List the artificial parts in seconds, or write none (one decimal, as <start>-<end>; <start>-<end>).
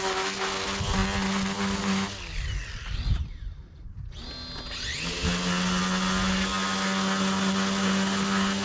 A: none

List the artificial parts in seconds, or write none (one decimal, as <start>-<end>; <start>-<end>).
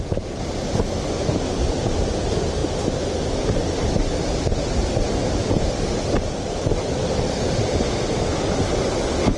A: none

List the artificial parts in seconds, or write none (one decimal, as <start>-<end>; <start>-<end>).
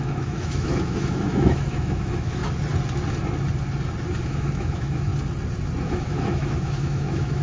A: 0.0-2.4; 4.2-5.1; 5.8-7.4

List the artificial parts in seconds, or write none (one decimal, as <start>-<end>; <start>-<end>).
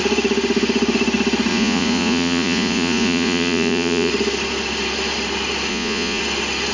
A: 1.5-4.1; 5.7-6.2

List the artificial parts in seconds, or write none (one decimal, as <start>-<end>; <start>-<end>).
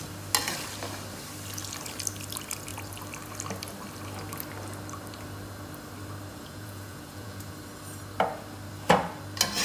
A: 6.3-7.4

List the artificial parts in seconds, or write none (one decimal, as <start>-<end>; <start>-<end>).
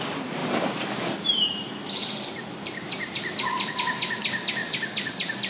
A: 0.4-3.7; 4.6-5.5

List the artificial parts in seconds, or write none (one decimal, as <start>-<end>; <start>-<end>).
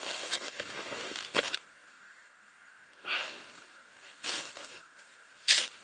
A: 0.0-5.8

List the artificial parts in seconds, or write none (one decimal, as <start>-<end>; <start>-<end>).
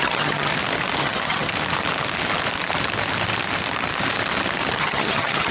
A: 0.0-0.5; 1.0-1.5; 4.8-5.5